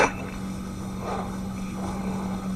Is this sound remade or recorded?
remade